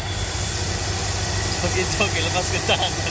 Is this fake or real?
real